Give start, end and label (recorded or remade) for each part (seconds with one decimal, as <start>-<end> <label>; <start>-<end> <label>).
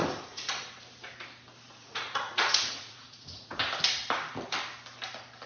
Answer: 0.0-0.5 remade; 0.5-1.8 recorded; 1.8-3.6 remade; 3.6-5.5 recorded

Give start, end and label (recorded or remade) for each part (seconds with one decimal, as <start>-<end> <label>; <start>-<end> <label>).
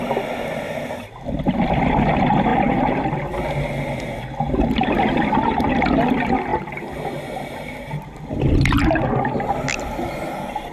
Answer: 0.0-10.7 recorded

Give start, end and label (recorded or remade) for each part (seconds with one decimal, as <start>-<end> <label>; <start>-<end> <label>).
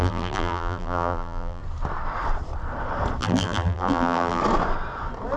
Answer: 0.0-1.6 remade; 1.6-3.2 recorded; 3.2-4.4 remade; 4.4-5.4 recorded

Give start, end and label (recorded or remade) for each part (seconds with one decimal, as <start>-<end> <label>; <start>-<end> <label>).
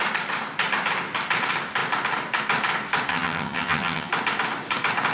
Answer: 0.0-3.1 recorded; 3.1-4.1 remade; 4.1-5.1 recorded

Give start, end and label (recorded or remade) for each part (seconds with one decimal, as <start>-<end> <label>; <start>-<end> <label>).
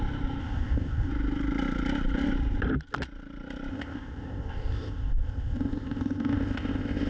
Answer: 0.0-0.4 recorded; 0.4-1.1 remade; 1.1-3.7 recorded; 3.7-7.1 remade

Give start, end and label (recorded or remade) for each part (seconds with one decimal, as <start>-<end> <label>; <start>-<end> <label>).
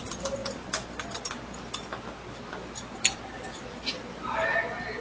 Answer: 0.0-5.0 recorded